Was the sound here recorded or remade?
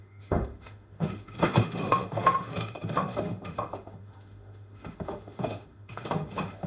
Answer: remade